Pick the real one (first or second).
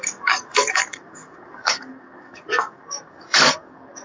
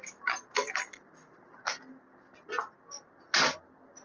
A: second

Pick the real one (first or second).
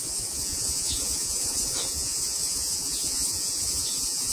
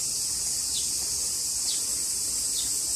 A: second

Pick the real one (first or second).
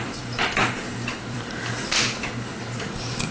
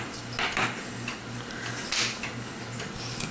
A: second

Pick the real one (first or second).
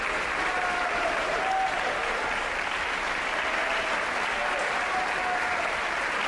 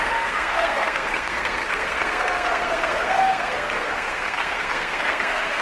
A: first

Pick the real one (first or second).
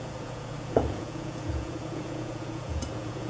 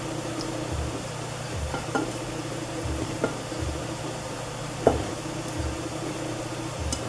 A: second